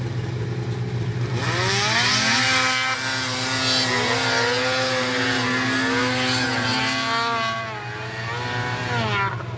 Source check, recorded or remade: recorded